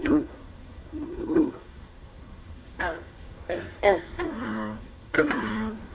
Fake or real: fake